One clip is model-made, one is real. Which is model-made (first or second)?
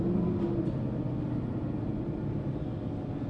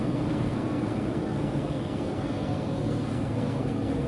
second